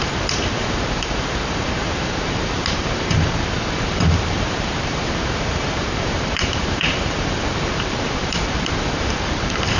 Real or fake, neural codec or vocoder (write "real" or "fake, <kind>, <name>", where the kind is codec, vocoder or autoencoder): fake, vocoder, BigVGAN v2